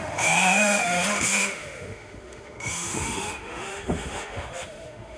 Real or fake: fake